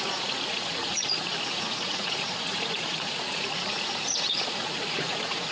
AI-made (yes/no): yes